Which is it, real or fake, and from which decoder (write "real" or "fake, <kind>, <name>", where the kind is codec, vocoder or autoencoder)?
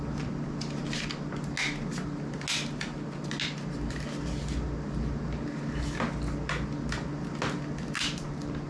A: real